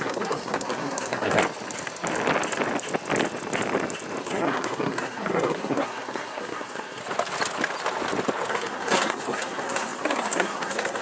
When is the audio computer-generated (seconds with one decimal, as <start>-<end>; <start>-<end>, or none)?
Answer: 0.0-1.4; 4.2-7.0; 8.5-11.0